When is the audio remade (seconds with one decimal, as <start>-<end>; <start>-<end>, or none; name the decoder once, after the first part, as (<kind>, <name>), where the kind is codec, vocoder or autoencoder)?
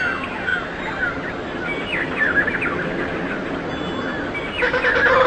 none